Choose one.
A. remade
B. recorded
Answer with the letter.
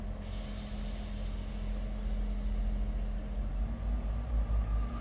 B